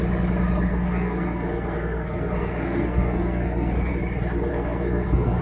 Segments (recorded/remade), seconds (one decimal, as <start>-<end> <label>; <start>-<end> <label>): 0.0-0.7 recorded; 0.7-3.9 remade; 3.9-4.5 recorded; 4.5-5.4 remade